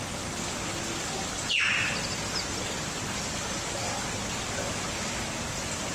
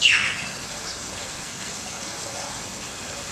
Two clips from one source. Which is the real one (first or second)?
first